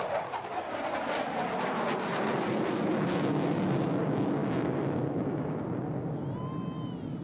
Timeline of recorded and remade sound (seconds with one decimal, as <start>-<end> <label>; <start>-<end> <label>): 0.0-4.4 recorded; 4.4-5.6 remade; 5.6-7.2 recorded

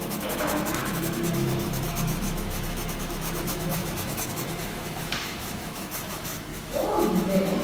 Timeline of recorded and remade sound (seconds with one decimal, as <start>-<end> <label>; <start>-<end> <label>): 0.0-7.6 remade